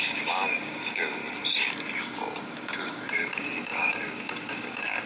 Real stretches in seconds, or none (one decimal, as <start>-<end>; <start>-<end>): 1.2-2.4